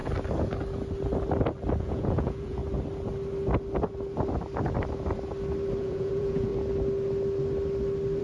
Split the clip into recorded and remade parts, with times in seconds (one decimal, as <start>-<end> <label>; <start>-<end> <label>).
0.0-1.8 recorded; 1.8-2.6 remade; 2.6-5.8 recorded; 5.8-6.5 remade; 6.5-8.2 recorded